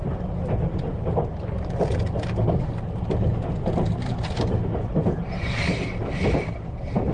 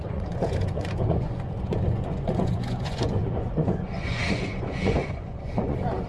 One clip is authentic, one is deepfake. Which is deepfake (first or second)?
second